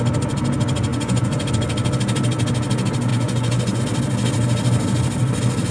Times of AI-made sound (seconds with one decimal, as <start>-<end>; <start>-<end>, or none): 0.9-1.5; 3.1-3.8

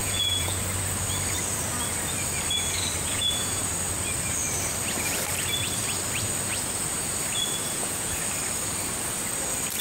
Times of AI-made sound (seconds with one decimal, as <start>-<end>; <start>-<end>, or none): 0.0-0.6; 3.1-3.7; 7.6-8.2

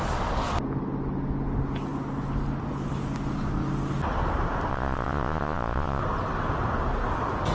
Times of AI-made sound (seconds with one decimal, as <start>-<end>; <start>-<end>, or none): 4.7-6.0

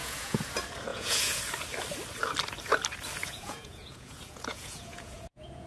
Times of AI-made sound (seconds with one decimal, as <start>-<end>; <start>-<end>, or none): 0.0-0.5; 0.9-1.4; 3.2-5.7

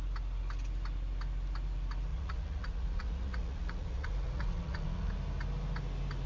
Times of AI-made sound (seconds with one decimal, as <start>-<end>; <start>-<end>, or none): 2.1-5.1